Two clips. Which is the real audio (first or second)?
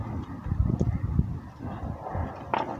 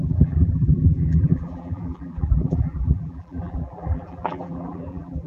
first